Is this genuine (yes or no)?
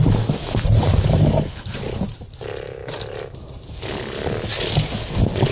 yes